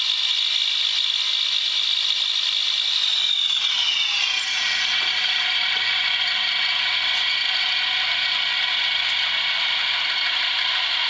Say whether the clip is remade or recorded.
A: recorded